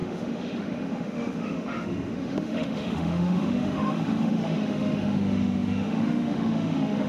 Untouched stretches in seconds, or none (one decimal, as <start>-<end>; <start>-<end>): none